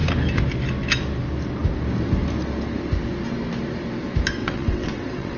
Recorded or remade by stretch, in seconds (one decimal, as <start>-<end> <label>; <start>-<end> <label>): 0.0-4.4 recorded; 4.4-5.4 remade